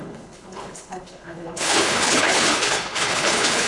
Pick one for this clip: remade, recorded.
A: remade